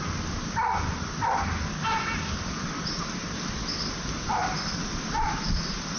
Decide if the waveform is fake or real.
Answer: real